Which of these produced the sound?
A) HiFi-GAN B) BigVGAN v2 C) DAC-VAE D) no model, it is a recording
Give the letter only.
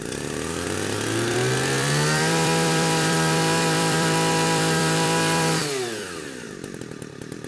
B